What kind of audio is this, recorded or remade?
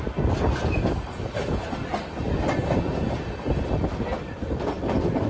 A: recorded